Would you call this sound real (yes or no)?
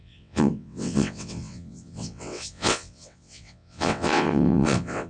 no